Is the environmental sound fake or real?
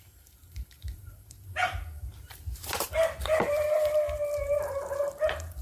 fake